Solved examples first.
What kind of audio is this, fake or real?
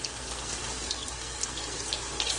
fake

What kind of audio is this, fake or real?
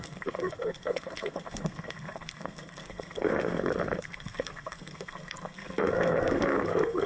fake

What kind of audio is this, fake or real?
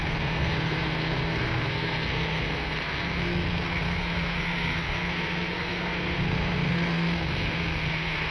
fake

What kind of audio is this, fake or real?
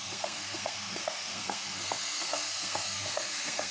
fake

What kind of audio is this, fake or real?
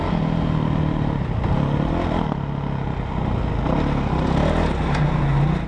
real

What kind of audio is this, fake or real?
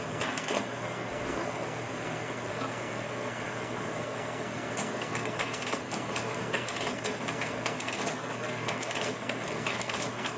fake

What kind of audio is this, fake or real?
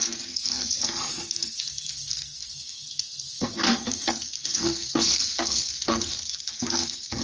fake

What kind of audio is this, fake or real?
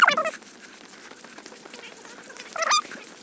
real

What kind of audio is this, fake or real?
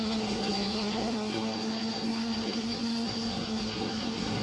fake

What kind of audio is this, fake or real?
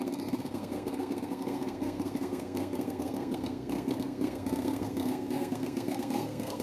fake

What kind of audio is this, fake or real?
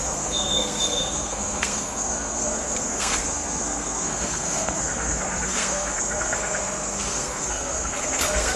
fake